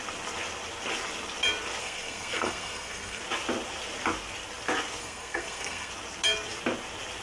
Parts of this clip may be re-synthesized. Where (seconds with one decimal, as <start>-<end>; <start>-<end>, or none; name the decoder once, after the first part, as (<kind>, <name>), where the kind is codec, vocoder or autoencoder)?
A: 1.8-3.2 (codec, SNAC); 5.0-5.9